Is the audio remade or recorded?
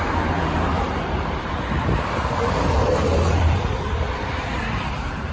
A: remade